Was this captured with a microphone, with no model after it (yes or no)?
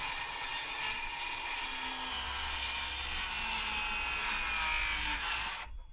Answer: yes